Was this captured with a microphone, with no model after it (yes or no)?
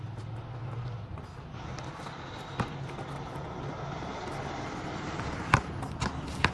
yes